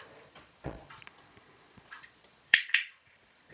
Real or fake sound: fake